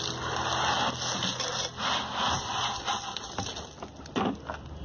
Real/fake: real